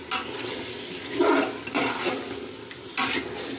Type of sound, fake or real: real